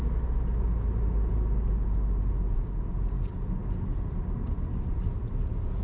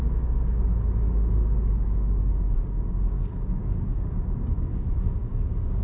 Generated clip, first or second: second